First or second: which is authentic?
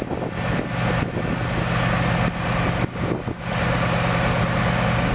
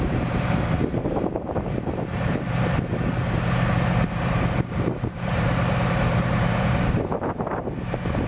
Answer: first